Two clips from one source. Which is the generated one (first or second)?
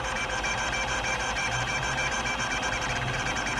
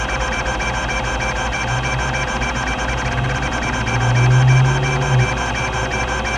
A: first